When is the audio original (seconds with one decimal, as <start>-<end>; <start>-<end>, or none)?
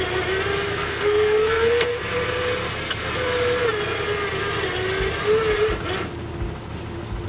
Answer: 0.0-0.7; 2.0-7.3